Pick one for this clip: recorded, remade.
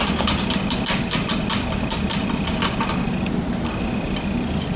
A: recorded